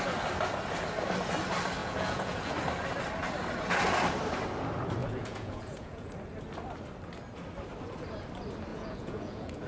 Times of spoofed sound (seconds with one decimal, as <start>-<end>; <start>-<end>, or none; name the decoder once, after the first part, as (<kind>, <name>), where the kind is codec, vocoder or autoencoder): 1.8-2.5 (vocoder, Vocos); 5.0-6.1; 8.7-9.7